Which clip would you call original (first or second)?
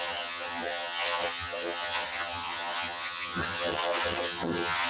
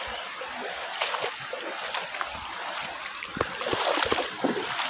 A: second